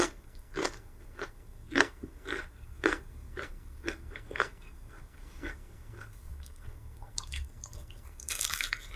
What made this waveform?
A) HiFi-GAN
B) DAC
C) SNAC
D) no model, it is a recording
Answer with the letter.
C